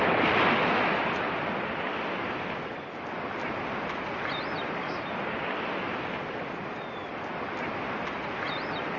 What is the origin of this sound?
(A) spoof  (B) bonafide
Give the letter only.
B